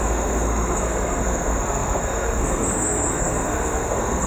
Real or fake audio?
fake